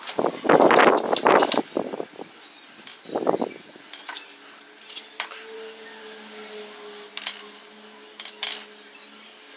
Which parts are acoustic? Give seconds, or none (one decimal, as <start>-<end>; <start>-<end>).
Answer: 0.0-9.6

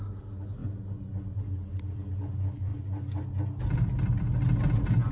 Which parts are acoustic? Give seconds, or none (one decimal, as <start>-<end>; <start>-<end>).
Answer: 0.0-5.1

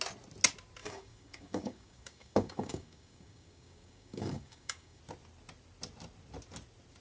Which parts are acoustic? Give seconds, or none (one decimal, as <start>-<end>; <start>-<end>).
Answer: 0.0-0.8; 5.0-7.0

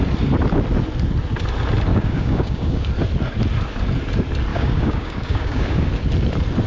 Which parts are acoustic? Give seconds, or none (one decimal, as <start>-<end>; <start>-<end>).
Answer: 0.0-1.9; 2.9-4.5; 5.9-6.7

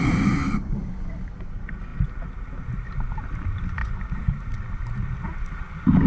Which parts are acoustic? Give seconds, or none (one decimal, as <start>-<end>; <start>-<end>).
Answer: 0.0-6.1

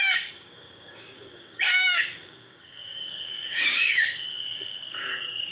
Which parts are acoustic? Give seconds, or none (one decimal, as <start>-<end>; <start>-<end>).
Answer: none